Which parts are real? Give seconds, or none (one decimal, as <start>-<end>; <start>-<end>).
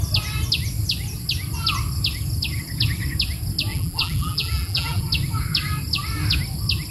0.0-3.7; 5.0-6.9